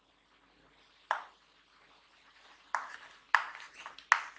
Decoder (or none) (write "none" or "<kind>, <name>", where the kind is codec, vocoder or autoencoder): none